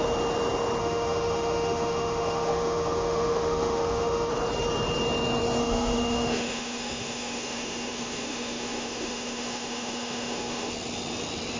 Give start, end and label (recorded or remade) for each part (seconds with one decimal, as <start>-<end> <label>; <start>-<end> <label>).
0.0-0.8 recorded; 0.8-4.3 remade; 4.3-5.6 recorded; 5.6-10.7 remade; 10.7-11.6 recorded